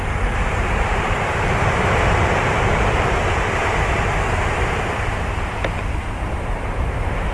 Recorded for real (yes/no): no